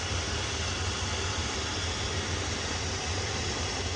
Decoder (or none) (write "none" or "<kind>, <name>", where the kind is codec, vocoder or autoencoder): none